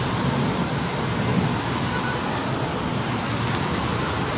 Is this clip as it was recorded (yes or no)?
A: yes